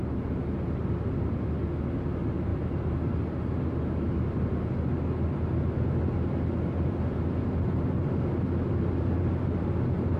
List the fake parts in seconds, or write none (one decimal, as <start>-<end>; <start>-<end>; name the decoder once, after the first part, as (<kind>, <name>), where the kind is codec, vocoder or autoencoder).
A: none